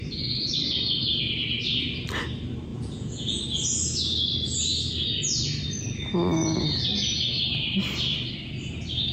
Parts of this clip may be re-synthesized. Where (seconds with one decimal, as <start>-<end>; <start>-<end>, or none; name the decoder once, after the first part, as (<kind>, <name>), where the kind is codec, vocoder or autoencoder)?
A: 2.7-3.4 (vocoder, Vocos)